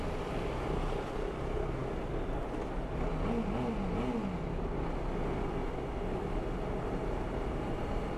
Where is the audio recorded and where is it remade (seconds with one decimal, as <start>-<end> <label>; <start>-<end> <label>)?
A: 0.0-8.2 recorded